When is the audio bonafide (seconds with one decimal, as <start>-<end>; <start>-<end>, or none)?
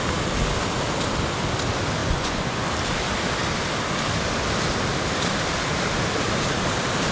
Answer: 0.0-2.0; 2.7-7.1